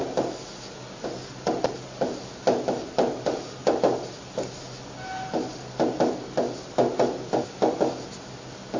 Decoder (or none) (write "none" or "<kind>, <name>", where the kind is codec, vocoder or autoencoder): none